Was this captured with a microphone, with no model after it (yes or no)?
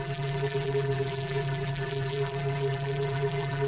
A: no